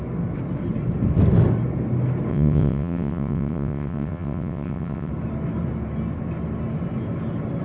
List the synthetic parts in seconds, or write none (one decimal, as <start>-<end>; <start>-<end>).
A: 2.3-5.1